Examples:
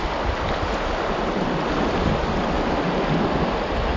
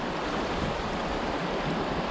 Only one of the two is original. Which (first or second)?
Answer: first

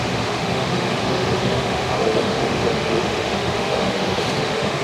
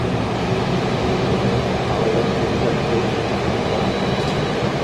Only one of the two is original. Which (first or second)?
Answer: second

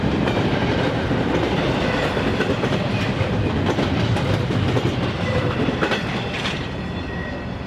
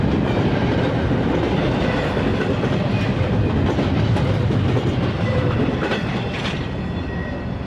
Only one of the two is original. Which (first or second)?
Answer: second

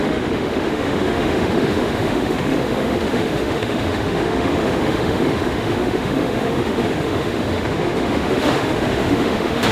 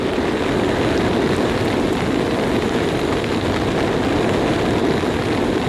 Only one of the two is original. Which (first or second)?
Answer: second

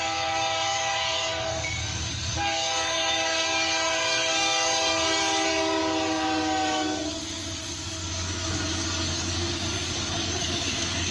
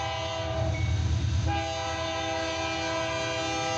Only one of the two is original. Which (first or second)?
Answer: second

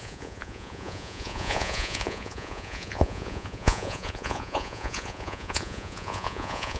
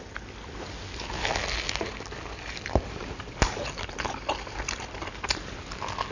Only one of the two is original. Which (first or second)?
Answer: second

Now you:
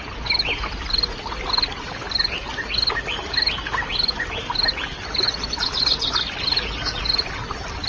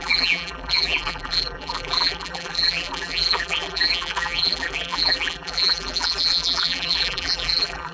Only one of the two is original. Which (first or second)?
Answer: first